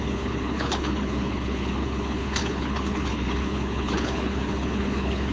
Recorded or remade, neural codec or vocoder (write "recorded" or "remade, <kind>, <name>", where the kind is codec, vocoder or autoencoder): remade, codec, HILCodec